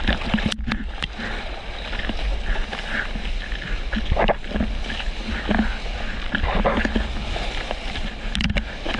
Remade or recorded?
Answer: recorded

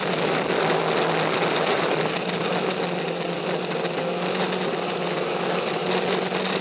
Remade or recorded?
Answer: recorded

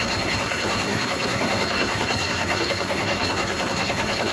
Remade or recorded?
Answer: remade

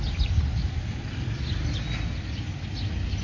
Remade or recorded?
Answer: recorded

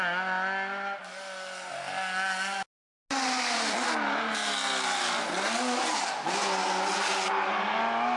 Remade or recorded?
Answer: recorded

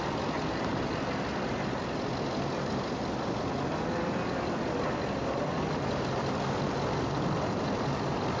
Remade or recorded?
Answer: recorded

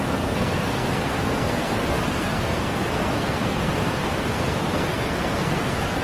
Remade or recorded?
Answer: remade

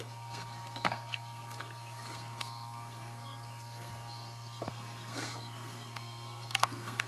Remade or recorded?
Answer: remade